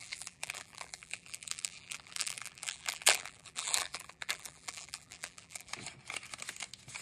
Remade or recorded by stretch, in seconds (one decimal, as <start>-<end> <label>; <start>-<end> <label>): 0.0-5.7 remade; 5.7-7.0 recorded